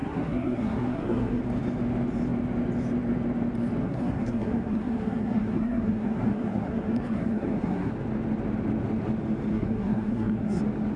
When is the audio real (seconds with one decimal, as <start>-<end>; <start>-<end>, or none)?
1.4-3.8; 7.9-9.5; 10.6-11.0